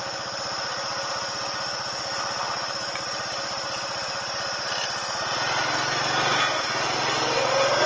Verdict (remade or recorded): recorded